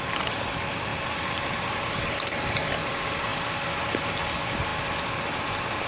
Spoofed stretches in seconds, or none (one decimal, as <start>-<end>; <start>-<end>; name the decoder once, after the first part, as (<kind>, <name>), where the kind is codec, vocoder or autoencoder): 4.7-5.9 (vocoder, BigVGAN v2)